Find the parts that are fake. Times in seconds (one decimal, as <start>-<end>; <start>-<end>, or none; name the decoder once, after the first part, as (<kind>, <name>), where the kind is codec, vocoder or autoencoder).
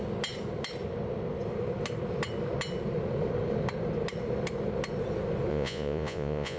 5.5-6.6 (vocoder, Vocos)